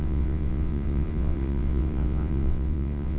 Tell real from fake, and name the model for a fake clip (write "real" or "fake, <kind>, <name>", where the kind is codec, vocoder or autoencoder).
fake, vocoder, WaveNeXt